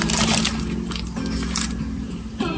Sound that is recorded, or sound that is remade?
recorded